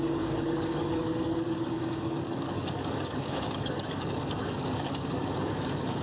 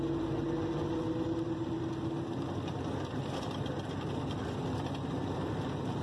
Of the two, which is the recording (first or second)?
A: second